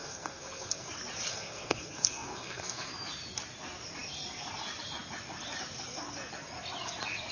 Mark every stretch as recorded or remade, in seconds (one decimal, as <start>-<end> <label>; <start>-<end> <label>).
0.0-0.9 remade; 0.9-1.3 recorded; 1.3-2.9 remade; 2.9-7.3 recorded

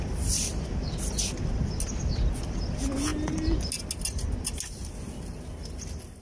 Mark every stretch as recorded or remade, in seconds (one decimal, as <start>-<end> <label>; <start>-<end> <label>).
0.0-6.2 recorded

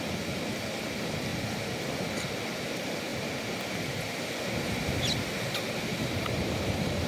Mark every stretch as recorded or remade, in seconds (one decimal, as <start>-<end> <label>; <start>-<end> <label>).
0.0-5.9 recorded; 5.9-7.1 remade

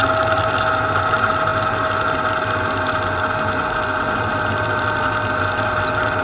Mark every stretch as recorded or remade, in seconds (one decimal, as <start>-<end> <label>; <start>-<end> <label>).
0.0-6.2 recorded